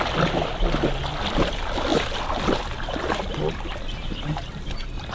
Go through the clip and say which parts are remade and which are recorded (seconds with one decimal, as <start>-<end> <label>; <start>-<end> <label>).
0.0-5.1 recorded